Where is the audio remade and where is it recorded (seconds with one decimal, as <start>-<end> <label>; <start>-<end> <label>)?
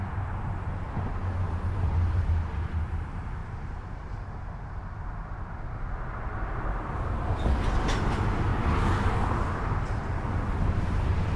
0.0-1.2 recorded; 1.2-2.3 remade; 2.3-3.4 recorded; 3.4-4.1 remade; 4.1-11.4 recorded